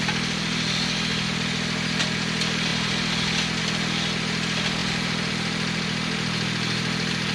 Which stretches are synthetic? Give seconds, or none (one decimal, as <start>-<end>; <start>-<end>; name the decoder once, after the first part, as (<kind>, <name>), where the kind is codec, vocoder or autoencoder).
4.8-5.3 (vocoder, BigVGAN v2)